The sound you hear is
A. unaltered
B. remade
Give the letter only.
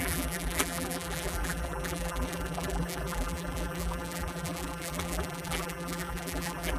B